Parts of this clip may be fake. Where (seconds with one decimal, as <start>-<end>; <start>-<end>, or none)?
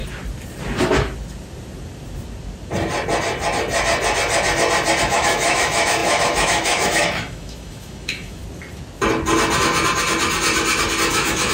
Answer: 5.0-8.4; 11.1-11.5